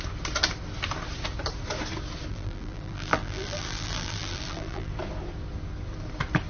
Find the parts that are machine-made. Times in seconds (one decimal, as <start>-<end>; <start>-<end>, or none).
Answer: 2.3-4.9